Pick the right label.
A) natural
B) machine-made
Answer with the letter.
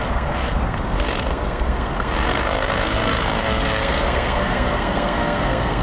B